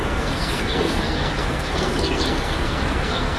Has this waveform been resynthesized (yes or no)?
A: yes